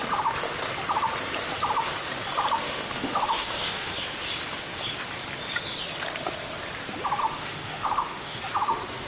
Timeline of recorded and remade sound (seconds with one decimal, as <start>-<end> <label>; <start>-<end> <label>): 0.0-2.6 recorded; 2.6-3.9 remade; 3.9-7.2 recorded; 7.2-8.4 remade; 8.4-9.1 recorded